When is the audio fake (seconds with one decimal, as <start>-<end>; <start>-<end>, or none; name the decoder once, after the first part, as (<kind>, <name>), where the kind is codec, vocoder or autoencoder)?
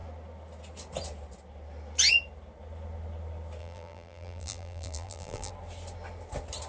3.6-5.5 (vocoder, BigVGAN v2)